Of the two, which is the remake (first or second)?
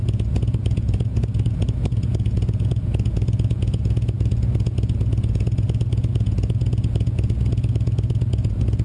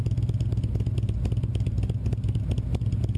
first